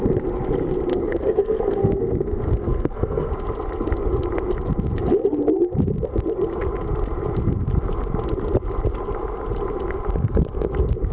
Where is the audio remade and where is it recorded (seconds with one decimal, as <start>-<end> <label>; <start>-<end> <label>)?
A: 0.0-0.9 recorded; 0.9-3.3 remade; 3.3-11.1 recorded